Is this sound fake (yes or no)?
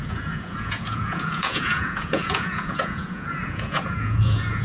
yes